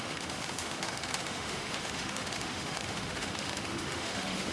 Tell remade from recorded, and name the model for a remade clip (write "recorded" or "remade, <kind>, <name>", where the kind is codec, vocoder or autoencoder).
remade, autoencoder, DAC-VAE